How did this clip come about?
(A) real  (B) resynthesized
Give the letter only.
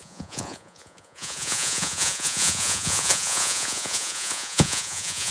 B